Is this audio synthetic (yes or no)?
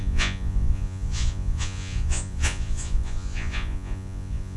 yes